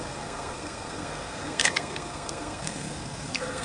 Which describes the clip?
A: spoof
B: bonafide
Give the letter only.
A